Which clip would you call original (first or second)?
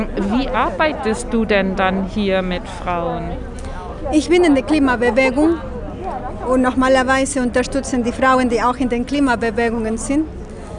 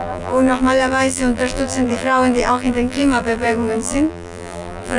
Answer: first